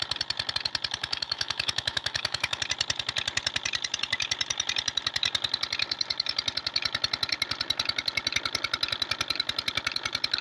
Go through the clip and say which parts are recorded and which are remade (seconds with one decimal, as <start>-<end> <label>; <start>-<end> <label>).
0.0-1.0 recorded; 1.0-2.6 remade; 2.6-10.4 recorded